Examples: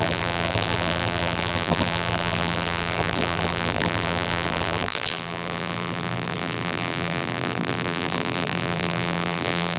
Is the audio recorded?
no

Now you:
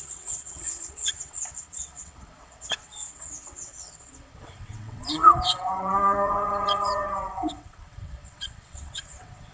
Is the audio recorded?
no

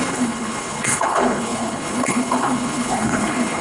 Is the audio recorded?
no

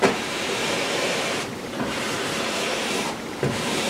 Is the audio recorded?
no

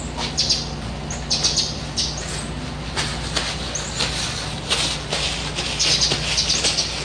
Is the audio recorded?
yes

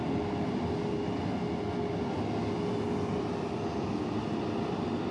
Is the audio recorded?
yes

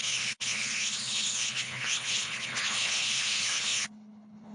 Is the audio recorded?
no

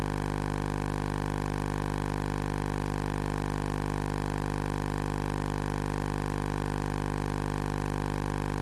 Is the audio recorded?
yes